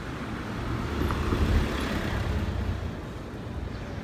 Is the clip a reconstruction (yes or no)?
no